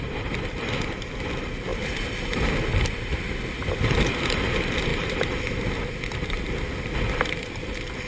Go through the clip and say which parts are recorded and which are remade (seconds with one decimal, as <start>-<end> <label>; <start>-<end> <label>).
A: 0.0-1.7 recorded; 1.7-2.5 remade; 2.5-4.9 recorded; 4.9-5.4 remade; 5.4-8.1 recorded